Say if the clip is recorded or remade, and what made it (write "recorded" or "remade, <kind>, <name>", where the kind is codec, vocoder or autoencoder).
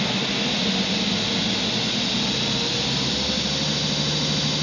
recorded